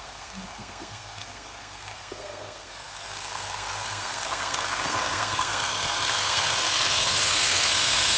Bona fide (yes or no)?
no